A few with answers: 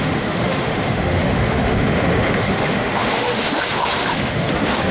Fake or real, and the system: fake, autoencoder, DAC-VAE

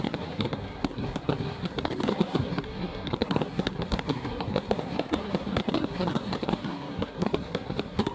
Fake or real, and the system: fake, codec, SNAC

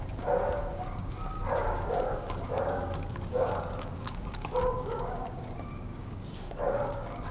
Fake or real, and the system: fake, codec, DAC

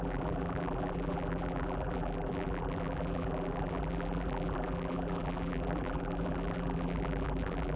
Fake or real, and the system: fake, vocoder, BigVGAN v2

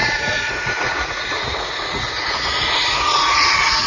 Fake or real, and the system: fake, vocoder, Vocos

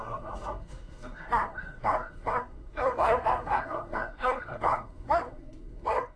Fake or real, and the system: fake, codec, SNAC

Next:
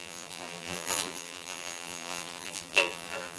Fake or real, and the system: fake, vocoder, BigVGAN v2